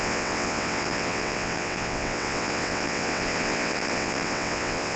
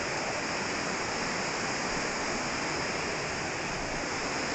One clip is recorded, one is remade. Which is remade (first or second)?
first